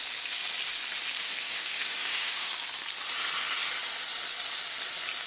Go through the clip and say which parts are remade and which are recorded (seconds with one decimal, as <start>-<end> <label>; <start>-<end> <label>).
0.0-1.2 recorded; 1.2-2.5 remade; 2.5-5.3 recorded